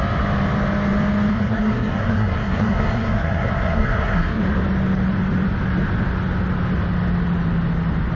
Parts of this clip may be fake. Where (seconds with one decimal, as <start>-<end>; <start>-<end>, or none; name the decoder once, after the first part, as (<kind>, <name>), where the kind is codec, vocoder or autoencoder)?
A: 1.3-4.4 (codec, SNAC)